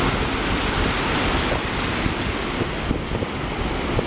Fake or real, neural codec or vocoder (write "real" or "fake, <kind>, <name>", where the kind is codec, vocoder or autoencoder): real